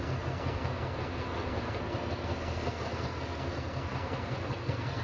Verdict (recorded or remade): remade